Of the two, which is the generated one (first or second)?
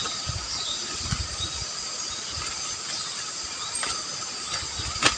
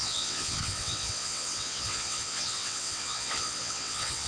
second